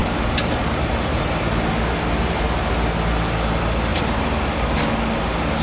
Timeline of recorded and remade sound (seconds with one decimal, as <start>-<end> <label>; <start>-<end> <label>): 0.0-2.4 remade; 2.4-3.9 recorded; 3.9-4.8 remade; 4.8-5.6 recorded